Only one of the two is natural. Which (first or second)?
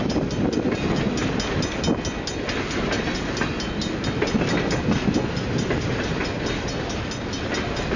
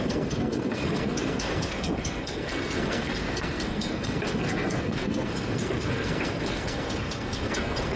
first